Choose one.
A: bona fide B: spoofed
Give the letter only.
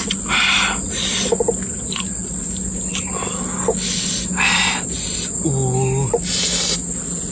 A